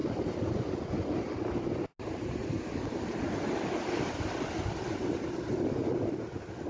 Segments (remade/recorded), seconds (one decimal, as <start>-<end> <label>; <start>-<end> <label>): 0.0-6.7 recorded